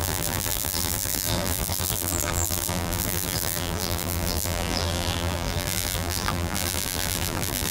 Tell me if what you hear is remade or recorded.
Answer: remade